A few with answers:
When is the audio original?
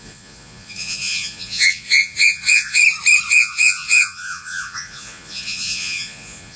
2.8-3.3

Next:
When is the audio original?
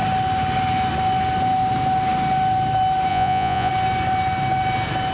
0.0-3.1; 3.7-5.1